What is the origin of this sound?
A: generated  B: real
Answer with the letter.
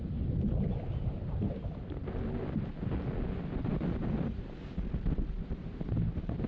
B